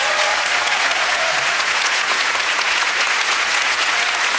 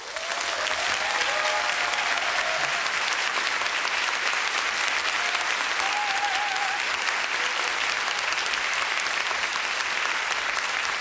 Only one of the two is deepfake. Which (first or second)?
first